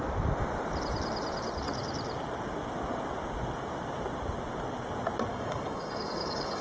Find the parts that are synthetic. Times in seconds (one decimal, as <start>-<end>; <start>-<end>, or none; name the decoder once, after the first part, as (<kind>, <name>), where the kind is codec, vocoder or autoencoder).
5.3-6.6 (codec, DAC)